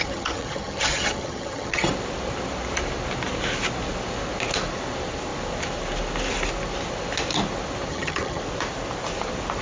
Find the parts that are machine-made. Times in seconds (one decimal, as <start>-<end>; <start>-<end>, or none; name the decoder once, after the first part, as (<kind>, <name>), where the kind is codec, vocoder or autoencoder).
0.0-1.9 (vocoder, HiFi-GAN); 7.9-8.4